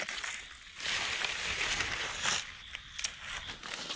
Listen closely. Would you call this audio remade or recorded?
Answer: recorded